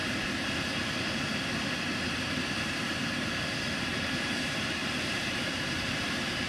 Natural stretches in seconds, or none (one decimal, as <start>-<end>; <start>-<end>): 0.0-2.5